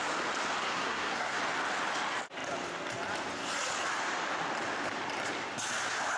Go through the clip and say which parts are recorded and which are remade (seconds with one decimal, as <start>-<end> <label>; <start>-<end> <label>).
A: 0.0-0.6 recorded; 0.6-1.4 remade; 1.4-6.2 recorded